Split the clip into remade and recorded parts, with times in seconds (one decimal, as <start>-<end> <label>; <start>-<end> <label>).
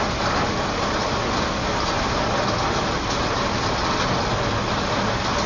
0.0-5.5 recorded